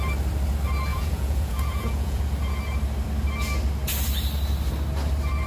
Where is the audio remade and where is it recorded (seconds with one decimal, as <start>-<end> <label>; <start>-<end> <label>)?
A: 0.0-0.9 recorded; 0.9-2.2 remade; 2.2-5.5 recorded